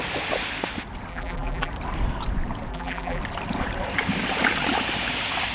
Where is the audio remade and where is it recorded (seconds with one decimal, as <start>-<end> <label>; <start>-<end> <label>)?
0.0-1.1 recorded; 1.1-1.7 remade; 1.7-2.7 recorded; 2.7-3.2 remade; 3.2-5.5 recorded